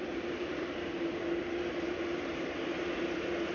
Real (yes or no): no